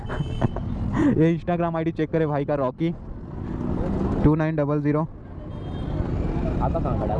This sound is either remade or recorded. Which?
recorded